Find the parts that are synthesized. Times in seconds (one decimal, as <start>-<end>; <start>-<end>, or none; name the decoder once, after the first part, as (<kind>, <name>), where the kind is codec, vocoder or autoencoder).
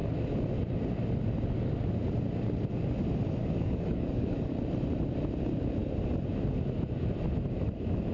3.4-4.5 (codec, DAC)